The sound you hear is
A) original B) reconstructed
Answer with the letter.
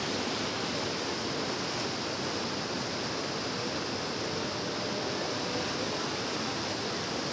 A